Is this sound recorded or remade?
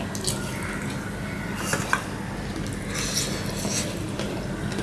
recorded